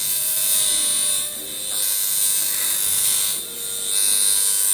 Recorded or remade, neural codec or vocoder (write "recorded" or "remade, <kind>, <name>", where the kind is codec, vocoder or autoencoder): recorded